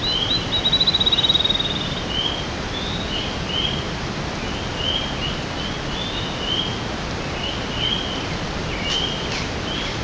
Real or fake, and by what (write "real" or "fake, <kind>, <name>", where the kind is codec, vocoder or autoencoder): real